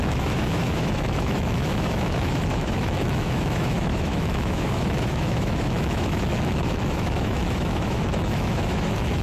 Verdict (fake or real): fake